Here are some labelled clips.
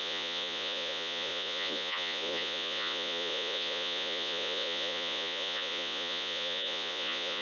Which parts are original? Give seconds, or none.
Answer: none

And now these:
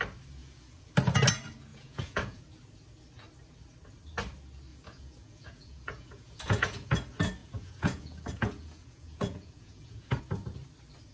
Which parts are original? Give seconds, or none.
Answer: 0.0-0.4; 0.9-1.7; 2.4-4.7; 6.9-7.4; 10.2-11.1

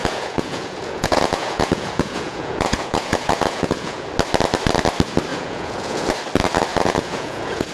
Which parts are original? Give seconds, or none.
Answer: 4.1-5.3; 6.1-6.7

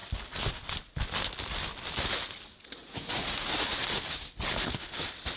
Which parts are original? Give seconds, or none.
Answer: 0.0-2.8; 3.5-5.4

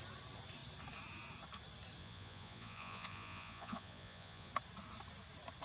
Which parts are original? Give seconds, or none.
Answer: 0.0-2.0; 4.5-5.6

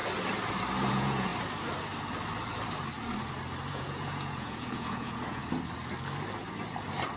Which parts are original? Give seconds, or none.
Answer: 0.0-0.9; 1.3-3.7; 5.4-7.2